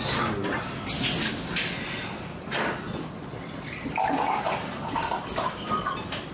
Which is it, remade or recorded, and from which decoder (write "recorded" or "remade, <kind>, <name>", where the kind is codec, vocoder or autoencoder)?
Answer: recorded